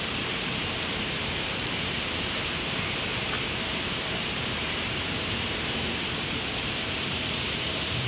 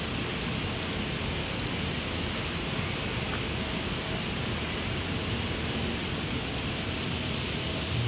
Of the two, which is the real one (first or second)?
second